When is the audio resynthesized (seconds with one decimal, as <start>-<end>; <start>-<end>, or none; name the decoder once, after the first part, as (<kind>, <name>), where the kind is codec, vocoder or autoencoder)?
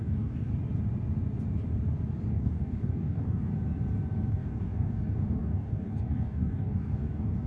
0.0-0.5 (codec, DAC); 2.3-3.5; 4.3-7.5